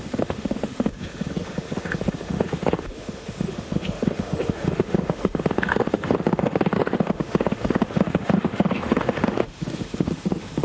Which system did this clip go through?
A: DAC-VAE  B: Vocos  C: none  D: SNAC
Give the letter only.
A